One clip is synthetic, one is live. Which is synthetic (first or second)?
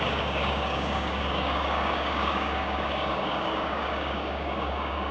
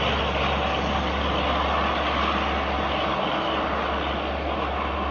first